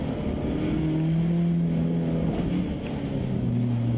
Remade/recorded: recorded